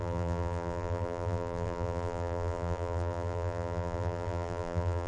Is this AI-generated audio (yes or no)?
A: yes